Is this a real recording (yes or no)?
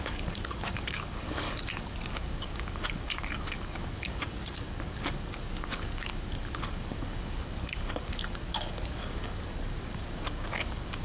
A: no